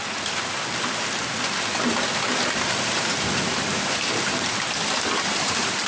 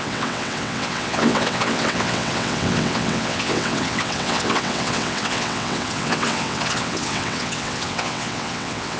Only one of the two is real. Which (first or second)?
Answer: first